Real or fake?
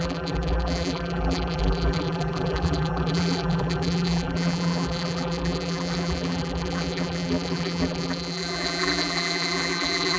fake